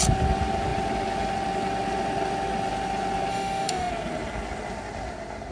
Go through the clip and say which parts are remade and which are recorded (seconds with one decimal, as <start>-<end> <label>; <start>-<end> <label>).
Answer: 0.0-3.3 recorded; 3.3-3.9 remade; 3.9-5.5 recorded